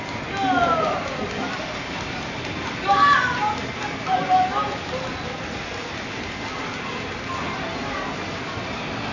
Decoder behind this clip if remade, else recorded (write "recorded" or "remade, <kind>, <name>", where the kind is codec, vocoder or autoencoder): recorded